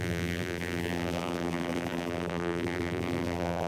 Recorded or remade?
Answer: remade